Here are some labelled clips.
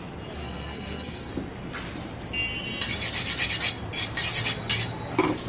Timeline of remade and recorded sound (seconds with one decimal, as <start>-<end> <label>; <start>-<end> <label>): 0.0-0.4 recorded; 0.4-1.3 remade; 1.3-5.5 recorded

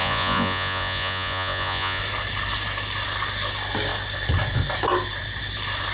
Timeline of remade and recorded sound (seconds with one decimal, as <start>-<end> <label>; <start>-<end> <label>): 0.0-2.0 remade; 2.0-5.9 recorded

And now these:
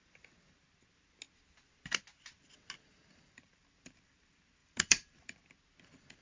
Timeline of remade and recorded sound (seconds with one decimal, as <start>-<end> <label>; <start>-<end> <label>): 0.0-3.1 recorded; 3.1-4.1 remade; 4.1-4.6 recorded; 4.6-5.4 remade; 5.4-6.2 recorded

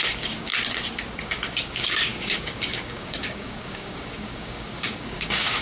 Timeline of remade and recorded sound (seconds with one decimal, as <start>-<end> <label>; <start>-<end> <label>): 0.0-0.5 remade; 0.5-1.2 recorded; 1.2-5.6 remade

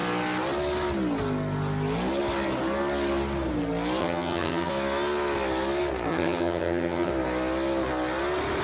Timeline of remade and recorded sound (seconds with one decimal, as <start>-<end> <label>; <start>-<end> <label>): 0.0-4.0 recorded; 4.0-4.7 remade; 4.7-6.1 recorded; 6.1-7.1 remade; 7.1-8.6 recorded

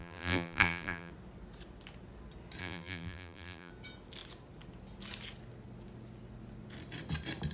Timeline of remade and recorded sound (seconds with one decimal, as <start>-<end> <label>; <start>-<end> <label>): 0.0-1.1 remade; 1.1-2.6 recorded; 2.6-3.7 remade; 3.7-7.5 recorded